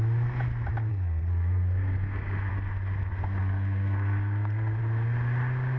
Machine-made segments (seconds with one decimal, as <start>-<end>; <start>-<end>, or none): 0.9-2.5; 3.4-4.8